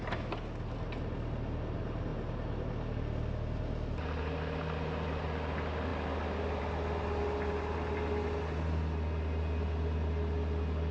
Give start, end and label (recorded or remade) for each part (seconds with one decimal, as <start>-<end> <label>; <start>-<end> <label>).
0.0-10.9 recorded